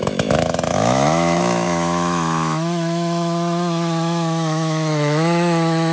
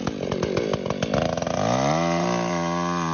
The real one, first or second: second